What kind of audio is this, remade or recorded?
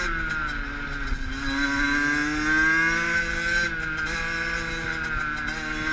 recorded